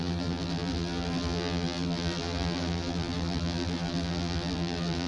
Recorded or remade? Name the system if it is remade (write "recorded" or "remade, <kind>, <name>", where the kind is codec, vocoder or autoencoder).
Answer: remade, vocoder, BigVGAN v2